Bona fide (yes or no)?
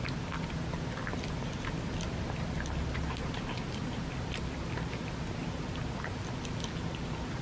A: yes